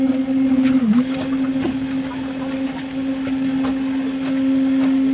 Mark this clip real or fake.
real